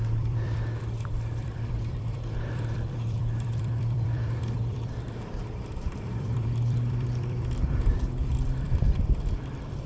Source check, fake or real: fake